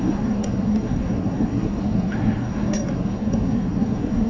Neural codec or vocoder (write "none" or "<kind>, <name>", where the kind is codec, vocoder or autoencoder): codec, SNAC